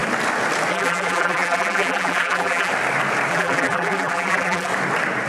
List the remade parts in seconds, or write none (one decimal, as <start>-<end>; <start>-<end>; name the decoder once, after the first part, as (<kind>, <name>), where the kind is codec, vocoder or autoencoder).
0.7-2.7 (vocoder, BigVGAN v2); 3.3-4.7